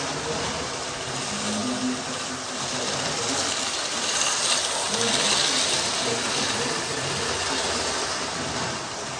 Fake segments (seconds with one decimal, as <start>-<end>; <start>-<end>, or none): none